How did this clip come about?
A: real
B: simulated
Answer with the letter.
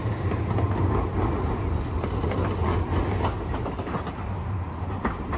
A